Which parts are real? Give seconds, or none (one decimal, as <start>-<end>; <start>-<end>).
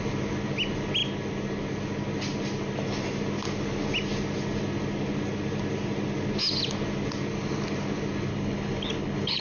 0.0-8.3